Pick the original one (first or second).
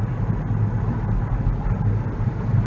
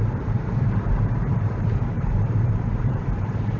first